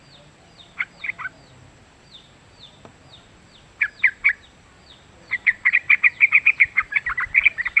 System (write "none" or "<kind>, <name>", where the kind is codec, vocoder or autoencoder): vocoder, BigVGAN v2